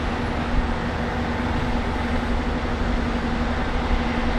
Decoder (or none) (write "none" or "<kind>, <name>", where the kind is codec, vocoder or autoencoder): none